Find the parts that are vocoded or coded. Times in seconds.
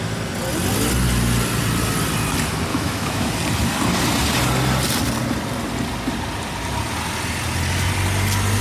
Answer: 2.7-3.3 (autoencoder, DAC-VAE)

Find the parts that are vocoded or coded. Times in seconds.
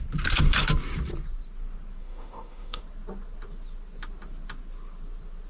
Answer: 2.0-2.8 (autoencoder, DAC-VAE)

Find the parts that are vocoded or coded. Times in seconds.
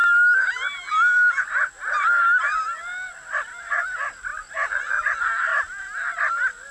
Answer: none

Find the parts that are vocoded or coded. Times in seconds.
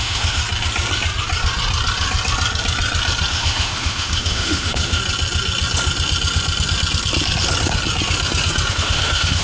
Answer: 0.0-0.4 (autoencoder, DAC-VAE); 3.3-5.0; 8.7-9.4